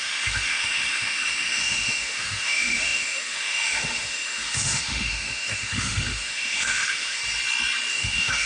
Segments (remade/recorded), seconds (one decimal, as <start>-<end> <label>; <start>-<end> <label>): 0.0-7.2 remade; 7.2-7.9 recorded; 7.9-8.5 remade